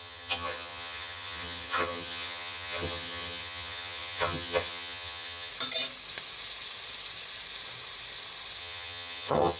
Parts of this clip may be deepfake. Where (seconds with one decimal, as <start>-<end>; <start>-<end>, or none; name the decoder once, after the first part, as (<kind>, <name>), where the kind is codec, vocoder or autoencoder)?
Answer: 0.0-5.5 (vocoder, HiFi-GAN); 8.6-9.6